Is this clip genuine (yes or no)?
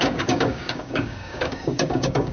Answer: no